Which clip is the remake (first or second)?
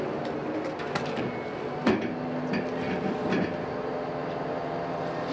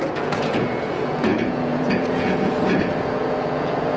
second